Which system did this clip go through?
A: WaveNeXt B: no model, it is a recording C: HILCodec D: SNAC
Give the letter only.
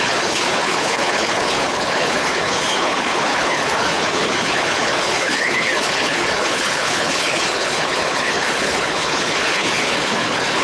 C